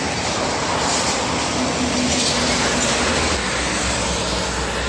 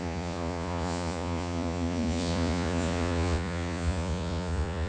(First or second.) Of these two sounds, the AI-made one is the second